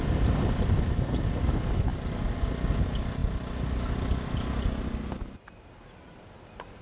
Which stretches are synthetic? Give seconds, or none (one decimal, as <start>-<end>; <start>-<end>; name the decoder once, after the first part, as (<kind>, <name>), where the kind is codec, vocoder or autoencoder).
none